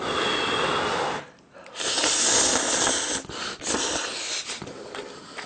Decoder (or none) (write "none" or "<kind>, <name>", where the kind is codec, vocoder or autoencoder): none